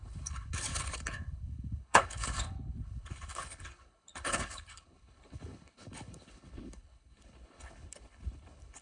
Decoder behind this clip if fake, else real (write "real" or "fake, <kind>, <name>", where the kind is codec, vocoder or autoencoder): fake, codec, HILCodec